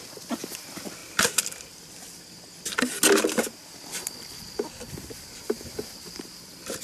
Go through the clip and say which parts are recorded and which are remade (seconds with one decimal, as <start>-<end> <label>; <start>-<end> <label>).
0.0-6.8 recorded